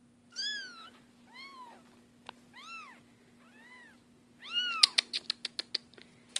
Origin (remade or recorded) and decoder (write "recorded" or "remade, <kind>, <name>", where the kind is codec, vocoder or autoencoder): recorded